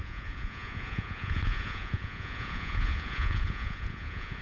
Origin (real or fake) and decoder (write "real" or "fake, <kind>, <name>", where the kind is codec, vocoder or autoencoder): fake, vocoder, Vocos